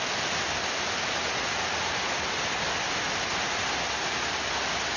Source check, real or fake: real